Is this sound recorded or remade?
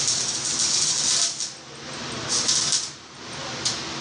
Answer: recorded